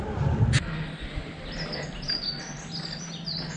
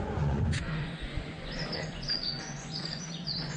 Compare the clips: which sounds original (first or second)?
first